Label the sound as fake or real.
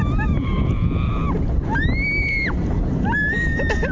real